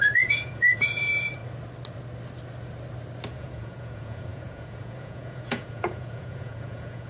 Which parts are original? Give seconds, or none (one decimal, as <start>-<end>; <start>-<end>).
1.4-3.3

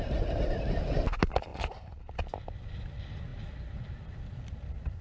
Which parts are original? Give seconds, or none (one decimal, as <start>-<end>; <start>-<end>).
0.0-1.5; 2.1-5.0

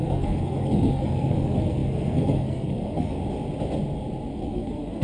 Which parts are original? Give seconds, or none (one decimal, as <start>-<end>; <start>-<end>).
3.2-4.3